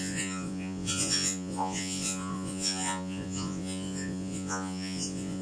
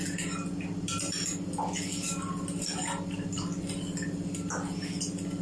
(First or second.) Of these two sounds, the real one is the second